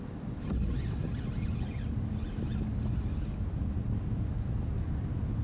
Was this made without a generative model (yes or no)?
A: yes